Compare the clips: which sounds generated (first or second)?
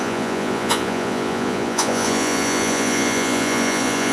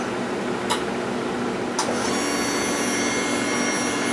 first